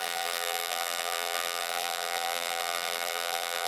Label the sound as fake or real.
fake